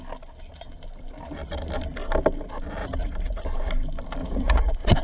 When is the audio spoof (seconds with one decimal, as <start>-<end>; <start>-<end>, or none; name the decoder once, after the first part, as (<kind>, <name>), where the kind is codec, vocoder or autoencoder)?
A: 2.8-3.4 (vocoder, Vocos); 4.2-5.0